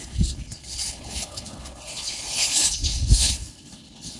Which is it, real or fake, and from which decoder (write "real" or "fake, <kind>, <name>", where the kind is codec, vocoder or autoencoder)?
fake, codec, HILCodec